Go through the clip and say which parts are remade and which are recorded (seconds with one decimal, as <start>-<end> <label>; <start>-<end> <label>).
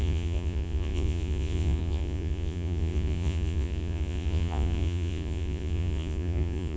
0.0-6.8 remade